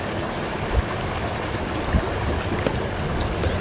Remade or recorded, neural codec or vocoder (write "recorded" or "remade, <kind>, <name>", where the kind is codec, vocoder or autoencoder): recorded